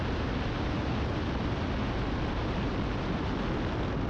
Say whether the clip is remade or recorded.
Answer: recorded